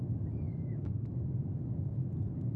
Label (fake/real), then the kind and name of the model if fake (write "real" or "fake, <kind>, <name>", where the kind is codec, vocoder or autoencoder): fake, codec, DAC